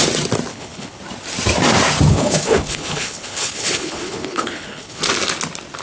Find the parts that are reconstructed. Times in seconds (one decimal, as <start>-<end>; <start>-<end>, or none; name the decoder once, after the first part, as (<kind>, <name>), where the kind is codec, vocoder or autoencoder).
0.5-1.0 (codec, HILCodec); 2.1-5.0